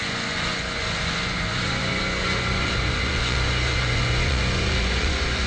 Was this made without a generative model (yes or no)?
no